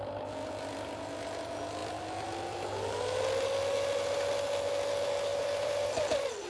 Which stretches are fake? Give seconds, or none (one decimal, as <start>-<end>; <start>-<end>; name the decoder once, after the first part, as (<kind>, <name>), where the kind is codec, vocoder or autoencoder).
5.3-6.5 (vocoder, BigVGAN v2)